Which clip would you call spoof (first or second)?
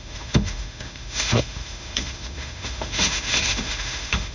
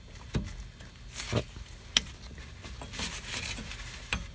first